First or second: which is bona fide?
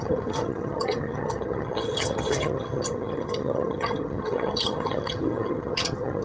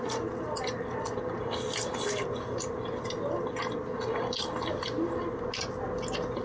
second